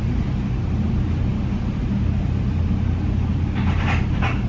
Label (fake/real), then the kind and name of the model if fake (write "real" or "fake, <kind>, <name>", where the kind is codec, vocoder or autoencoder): real